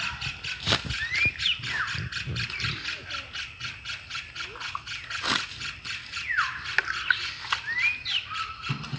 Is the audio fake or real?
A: real